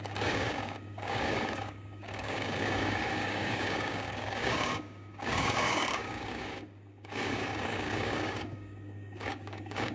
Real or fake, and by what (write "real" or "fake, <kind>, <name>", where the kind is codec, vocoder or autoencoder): fake, codec, DAC